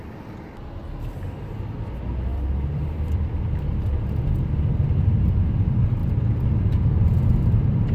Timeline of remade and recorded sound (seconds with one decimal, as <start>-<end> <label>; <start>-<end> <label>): 0.0-2.3 recorded; 2.3-3.7 remade; 3.7-6.0 recorded; 6.0-6.7 remade; 6.7-7.9 recorded